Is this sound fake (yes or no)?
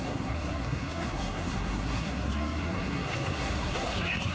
yes